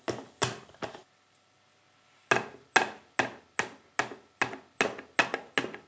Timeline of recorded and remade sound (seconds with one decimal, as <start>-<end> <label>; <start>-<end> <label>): 0.0-5.9 recorded